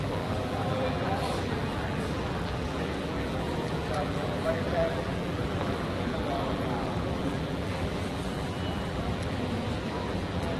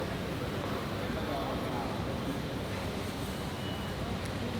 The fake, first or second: first